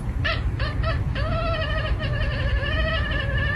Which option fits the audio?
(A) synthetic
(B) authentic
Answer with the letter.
B